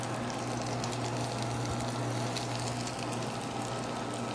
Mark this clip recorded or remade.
recorded